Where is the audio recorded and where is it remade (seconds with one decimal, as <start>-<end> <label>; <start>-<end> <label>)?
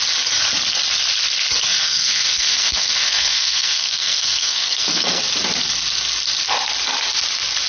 0.0-1.7 recorded; 1.7-5.2 remade; 5.2-7.7 recorded